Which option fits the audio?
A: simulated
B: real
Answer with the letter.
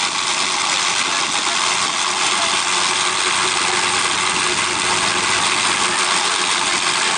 B